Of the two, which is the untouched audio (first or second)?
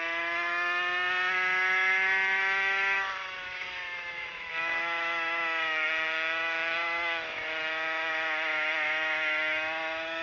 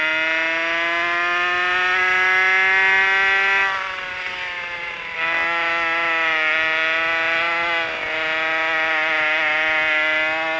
second